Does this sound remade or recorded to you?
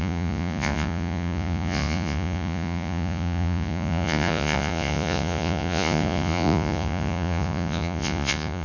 remade